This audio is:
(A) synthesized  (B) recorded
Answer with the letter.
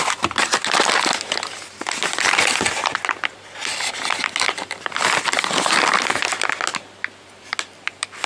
B